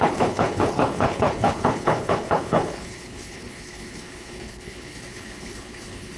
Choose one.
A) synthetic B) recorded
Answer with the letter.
A